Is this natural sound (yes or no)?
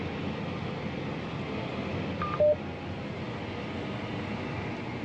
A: yes